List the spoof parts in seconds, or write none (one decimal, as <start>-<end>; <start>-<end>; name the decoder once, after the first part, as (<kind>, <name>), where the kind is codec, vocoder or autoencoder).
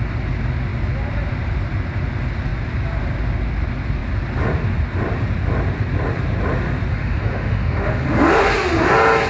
6.9-8.5 (autoencoder, DAC-VAE)